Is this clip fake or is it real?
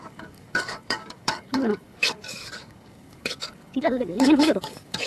fake